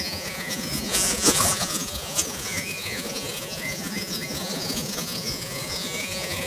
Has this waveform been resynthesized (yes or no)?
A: yes